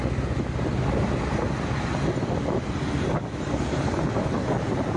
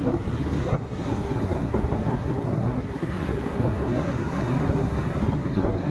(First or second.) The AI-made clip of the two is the second